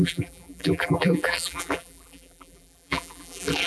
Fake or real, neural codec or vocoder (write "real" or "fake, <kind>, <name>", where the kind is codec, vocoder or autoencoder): fake, vocoder, BigVGAN v2